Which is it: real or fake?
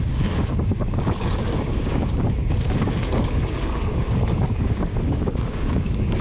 fake